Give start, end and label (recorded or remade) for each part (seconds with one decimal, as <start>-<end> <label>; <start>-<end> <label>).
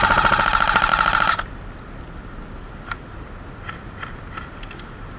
0.0-5.2 recorded